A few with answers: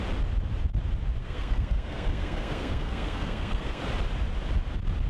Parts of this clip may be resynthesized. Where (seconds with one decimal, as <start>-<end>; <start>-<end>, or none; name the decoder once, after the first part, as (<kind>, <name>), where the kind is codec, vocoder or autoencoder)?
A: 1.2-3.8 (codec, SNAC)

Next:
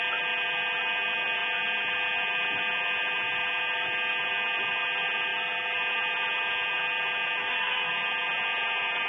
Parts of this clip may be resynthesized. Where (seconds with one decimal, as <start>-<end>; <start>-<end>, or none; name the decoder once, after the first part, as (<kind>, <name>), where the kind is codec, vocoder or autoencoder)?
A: 7.4-7.9 (codec, SNAC)

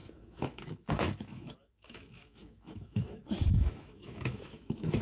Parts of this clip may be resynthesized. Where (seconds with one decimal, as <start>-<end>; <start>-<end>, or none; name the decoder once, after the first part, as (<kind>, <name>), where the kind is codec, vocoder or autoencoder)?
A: 0.0-5.0 (autoencoder, DAC-VAE)

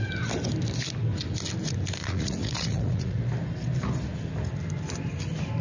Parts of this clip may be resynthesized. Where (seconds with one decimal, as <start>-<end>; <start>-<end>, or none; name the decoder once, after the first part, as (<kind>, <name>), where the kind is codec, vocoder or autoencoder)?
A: 2.0-3.2 (vocoder, Vocos)

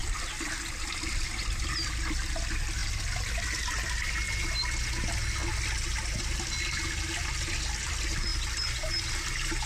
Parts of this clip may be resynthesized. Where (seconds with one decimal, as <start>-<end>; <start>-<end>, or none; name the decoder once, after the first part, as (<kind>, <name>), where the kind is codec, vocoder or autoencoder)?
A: none

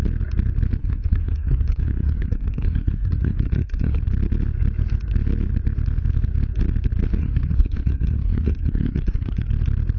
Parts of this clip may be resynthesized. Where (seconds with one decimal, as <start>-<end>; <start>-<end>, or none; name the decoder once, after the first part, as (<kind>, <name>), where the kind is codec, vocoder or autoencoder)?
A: 0.8-4.0 (codec, SNAC); 7.2-9.5

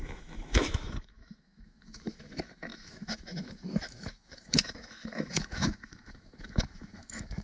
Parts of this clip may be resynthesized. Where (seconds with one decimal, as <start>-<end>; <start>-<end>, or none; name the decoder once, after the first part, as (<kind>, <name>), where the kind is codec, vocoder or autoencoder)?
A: 0.0-7.4 (autoencoder, DAC-VAE)